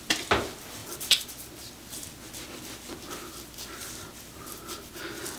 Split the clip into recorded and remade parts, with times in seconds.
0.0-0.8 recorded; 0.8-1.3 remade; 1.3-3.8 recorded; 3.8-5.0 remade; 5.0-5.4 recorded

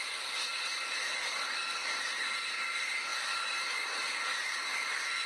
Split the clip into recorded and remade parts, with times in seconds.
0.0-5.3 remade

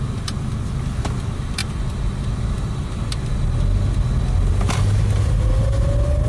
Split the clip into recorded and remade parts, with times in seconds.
0.0-6.3 recorded

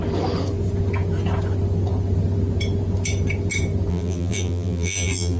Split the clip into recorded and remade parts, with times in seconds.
0.0-3.9 recorded; 3.9-5.4 remade